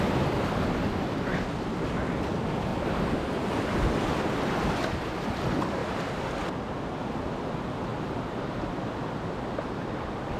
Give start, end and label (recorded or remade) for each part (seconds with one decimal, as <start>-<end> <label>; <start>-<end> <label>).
0.0-2.7 recorded; 2.7-3.5 remade; 3.5-5.8 recorded; 5.8-6.7 remade; 6.7-7.9 recorded; 7.9-8.8 remade; 8.8-10.4 recorded